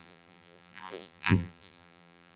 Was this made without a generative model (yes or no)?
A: no